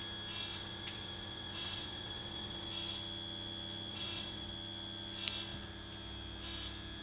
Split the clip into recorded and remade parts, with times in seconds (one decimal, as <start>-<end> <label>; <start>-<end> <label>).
0.0-0.5 recorded; 0.5-2.7 remade; 2.7-3.9 recorded; 3.9-4.5 remade; 4.5-7.0 recorded

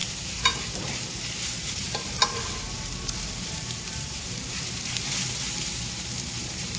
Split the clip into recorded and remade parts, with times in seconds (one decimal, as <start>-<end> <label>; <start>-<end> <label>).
0.0-6.8 remade

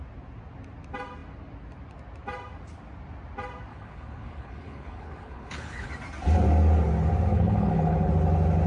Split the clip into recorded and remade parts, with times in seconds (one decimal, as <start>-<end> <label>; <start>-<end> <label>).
0.0-3.7 recorded; 3.7-5.9 remade; 5.9-7.3 recorded; 7.3-8.1 remade; 8.1-8.7 recorded

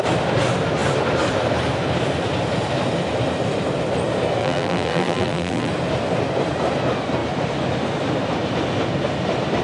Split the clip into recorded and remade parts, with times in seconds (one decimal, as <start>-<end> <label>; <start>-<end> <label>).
0.0-4.4 recorded; 4.4-5.7 remade; 5.7-9.6 recorded

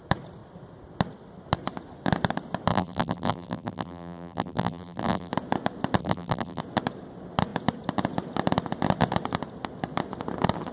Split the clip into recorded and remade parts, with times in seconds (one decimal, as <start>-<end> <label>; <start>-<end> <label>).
0.0-2.7 recorded; 2.7-5.3 remade; 5.3-6.0 recorded; 6.0-6.6 remade; 6.6-10.7 recorded

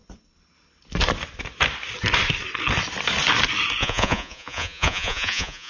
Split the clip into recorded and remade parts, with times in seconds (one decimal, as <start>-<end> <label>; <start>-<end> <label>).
0.0-3.8 recorded; 3.8-5.7 remade

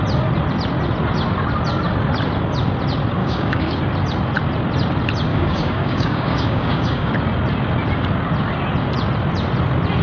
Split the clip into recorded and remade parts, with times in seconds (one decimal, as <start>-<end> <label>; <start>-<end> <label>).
0.0-3.2 recorded; 3.2-3.8 remade; 3.8-5.3 recorded; 5.3-7.1 remade; 7.1-10.0 recorded